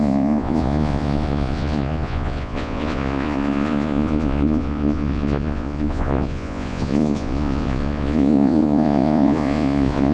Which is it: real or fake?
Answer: fake